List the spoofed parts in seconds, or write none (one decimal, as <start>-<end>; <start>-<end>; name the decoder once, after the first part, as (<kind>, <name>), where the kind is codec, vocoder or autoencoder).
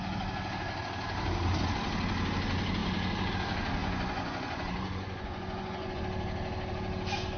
3.8-6.0 (vocoder, Vocos)